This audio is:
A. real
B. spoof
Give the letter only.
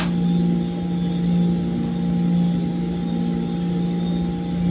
A